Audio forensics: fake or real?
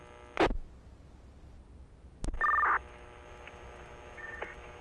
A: real